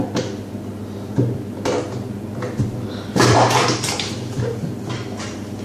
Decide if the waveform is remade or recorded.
recorded